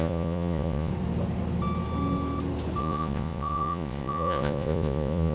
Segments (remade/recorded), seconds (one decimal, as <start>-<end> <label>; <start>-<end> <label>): 0.0-0.9 remade; 0.9-2.8 recorded; 2.8-5.3 remade